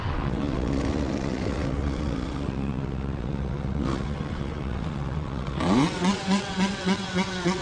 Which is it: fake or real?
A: fake